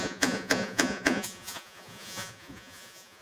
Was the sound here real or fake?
fake